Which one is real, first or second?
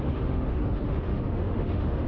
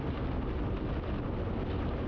second